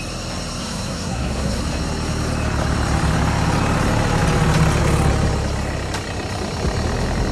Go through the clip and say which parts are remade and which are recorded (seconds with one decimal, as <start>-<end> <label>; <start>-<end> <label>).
0.0-0.6 recorded; 0.6-1.6 remade; 1.6-7.3 recorded